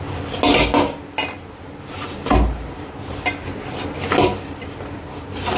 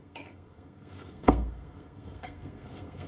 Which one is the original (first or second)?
first